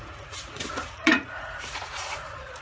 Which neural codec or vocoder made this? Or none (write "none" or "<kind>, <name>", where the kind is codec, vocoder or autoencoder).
vocoder, Vocos